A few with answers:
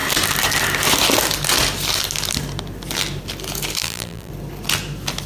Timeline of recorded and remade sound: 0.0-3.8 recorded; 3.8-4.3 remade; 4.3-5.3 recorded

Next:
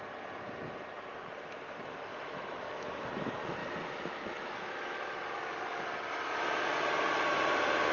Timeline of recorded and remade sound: 0.0-2.1 recorded; 2.1-3.0 remade; 3.0-3.6 recorded; 3.6-5.1 remade; 5.1-7.9 recorded

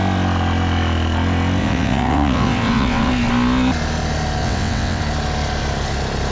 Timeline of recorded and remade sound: 0.0-1.6 recorded; 1.6-3.1 remade; 3.1-4.4 recorded; 4.4-5.0 remade; 5.0-6.3 recorded

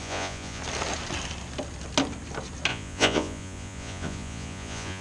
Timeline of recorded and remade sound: 0.0-0.6 remade; 0.6-2.7 recorded; 2.7-5.0 remade

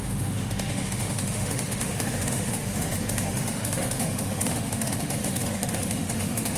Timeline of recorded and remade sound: 0.0-6.6 remade

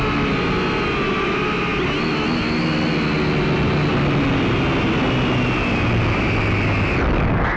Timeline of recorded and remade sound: 0.0-7.6 recorded